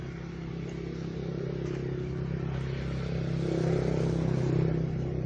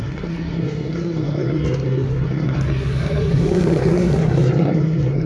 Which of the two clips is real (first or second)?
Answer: first